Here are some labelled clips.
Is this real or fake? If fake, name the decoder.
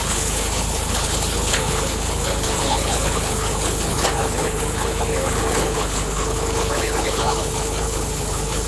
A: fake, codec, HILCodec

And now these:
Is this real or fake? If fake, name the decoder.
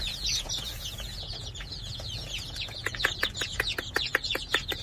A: fake, vocoder, Vocos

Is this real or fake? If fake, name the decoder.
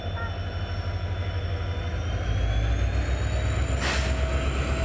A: real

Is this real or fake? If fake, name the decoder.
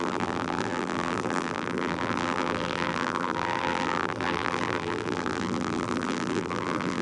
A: fake, vocoder, BigVGAN v2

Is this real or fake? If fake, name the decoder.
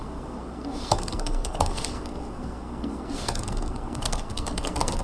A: fake, codec, SNAC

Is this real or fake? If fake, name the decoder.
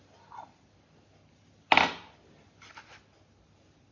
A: real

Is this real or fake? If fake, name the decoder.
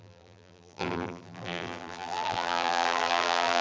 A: fake, vocoder, BigVGAN v2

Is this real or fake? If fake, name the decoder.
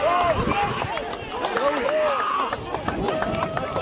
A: real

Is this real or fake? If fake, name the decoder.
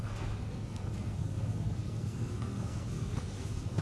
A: fake, codec, SNAC